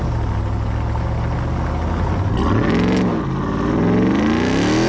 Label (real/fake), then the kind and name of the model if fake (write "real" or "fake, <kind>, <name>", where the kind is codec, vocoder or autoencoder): real